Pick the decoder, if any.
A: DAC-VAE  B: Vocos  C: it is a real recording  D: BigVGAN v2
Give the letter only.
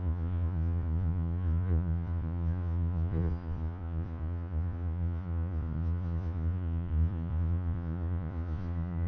B